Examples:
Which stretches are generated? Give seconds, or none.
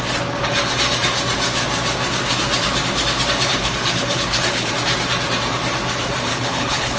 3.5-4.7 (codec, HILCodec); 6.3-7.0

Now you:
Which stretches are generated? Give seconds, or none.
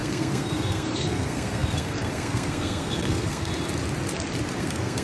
0.0-3.5 (codec, SNAC); 4.6-5.0